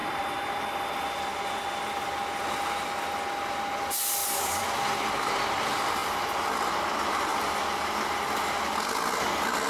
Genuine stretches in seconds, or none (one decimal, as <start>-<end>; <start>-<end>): 1.2-4.2; 4.8-6.0; 6.7-7.3; 8.0-9.7